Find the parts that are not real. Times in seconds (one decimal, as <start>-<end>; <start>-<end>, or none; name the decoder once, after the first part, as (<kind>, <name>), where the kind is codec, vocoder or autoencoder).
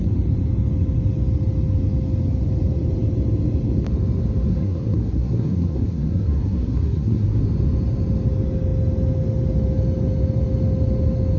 4.5-7.4 (codec, SNAC)